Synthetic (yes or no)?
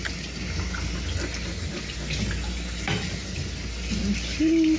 no